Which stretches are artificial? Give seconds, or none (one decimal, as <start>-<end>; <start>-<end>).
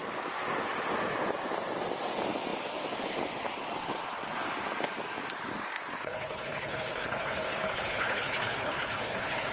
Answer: 5.9-9.5